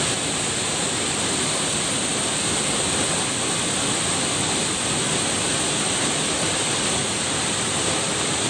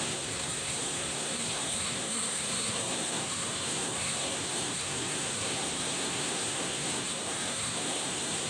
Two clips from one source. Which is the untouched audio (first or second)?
first